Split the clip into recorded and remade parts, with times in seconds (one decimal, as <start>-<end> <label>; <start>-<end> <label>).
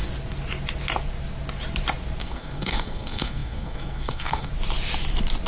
0.0-2.2 recorded; 2.2-4.5 remade; 4.5-5.5 recorded